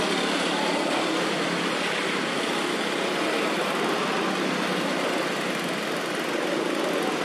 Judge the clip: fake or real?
real